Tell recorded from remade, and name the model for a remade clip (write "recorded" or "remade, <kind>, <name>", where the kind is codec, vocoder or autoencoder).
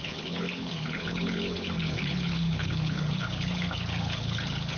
remade, codec, HILCodec